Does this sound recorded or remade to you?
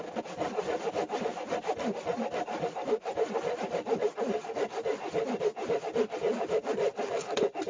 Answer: recorded